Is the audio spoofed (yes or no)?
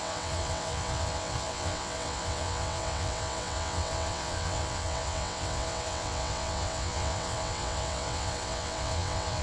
yes